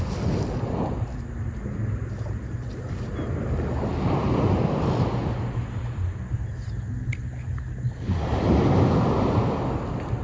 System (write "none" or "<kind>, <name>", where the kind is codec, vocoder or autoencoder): none